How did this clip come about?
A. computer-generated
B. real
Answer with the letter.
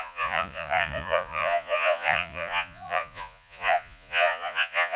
A